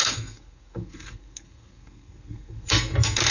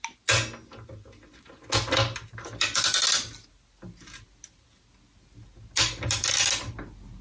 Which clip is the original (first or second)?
second